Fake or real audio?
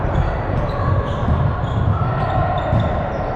real